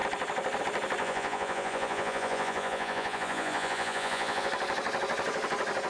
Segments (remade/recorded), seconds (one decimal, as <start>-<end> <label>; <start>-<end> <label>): 0.0-1.0 recorded; 1.0-4.5 remade; 4.5-5.9 recorded